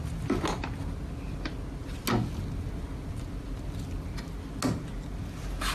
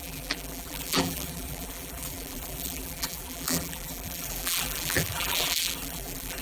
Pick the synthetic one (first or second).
second